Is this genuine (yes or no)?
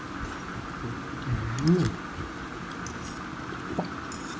yes